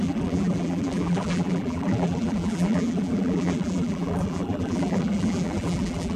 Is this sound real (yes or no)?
no